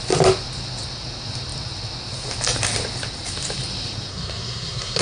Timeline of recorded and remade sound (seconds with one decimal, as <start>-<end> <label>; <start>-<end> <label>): 0.0-4.1 recorded; 4.1-5.0 remade